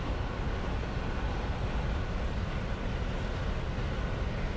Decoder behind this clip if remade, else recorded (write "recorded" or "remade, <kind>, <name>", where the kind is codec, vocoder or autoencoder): recorded